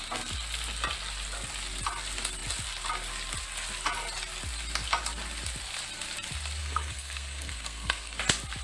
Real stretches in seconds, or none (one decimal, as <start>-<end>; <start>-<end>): 0.0-6.6; 8.2-8.6